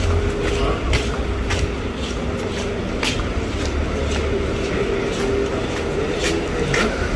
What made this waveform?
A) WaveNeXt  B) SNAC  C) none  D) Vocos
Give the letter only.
C